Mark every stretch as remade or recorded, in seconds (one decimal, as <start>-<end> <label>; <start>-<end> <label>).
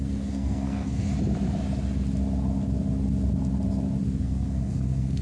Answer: 0.0-1.1 remade; 1.1-4.2 recorded; 4.2-5.2 remade